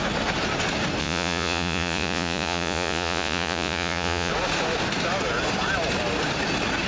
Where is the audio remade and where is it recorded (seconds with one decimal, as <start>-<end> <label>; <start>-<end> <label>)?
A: 0.0-1.0 recorded; 1.0-4.3 remade; 4.3-6.9 recorded